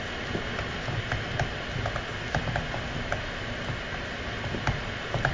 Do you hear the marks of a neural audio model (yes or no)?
no